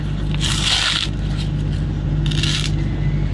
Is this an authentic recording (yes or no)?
yes